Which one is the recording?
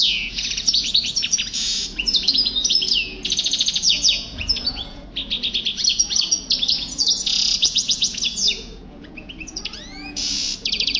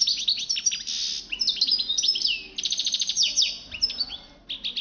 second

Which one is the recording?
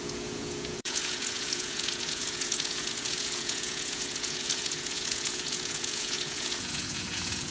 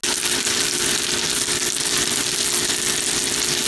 second